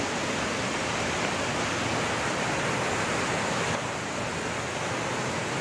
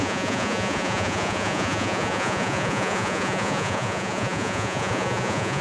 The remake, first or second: second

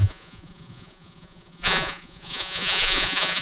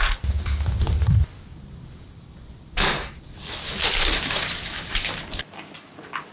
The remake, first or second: first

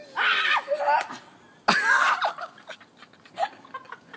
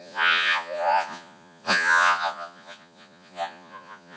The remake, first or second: second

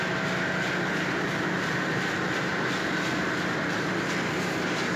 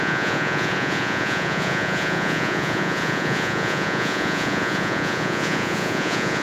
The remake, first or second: second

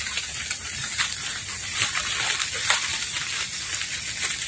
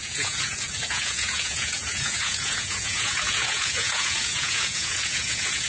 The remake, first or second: second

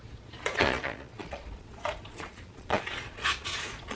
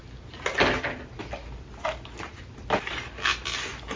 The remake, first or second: first